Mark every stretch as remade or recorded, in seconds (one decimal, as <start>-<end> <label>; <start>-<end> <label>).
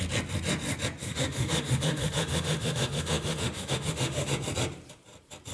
0.0-1.0 recorded; 1.0-4.3 remade; 4.3-5.5 recorded